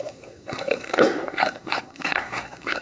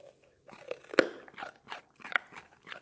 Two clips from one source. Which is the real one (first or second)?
second